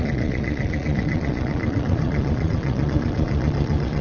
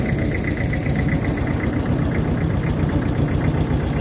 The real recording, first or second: second